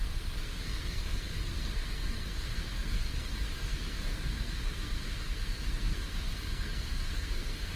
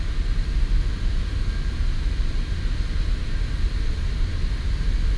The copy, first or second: first